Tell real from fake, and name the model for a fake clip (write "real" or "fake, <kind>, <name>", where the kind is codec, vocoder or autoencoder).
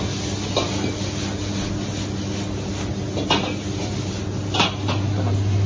real